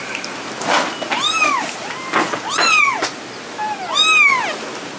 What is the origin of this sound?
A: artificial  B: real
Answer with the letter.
B